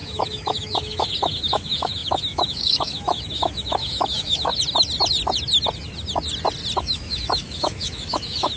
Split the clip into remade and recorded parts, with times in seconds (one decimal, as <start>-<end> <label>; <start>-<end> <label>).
0.0-4.5 remade; 4.5-6.8 recorded; 6.8-8.6 remade